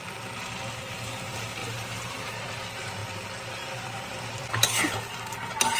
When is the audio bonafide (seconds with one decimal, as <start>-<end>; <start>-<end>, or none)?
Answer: 0.0-1.6; 2.3-5.8